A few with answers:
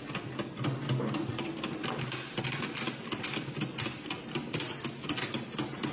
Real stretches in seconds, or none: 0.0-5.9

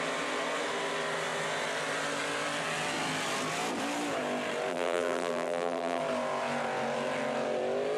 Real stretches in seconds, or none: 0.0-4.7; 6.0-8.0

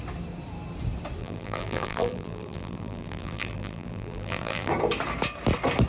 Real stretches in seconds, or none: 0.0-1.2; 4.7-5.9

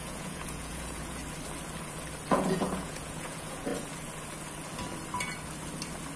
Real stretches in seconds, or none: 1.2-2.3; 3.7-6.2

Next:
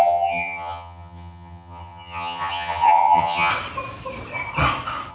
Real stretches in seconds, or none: 3.5-5.1

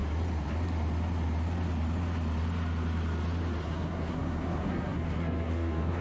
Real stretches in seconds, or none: 0.0-3.6

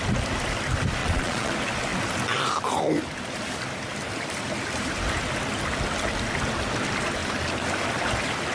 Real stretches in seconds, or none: 0.0-1.0; 1.5-8.5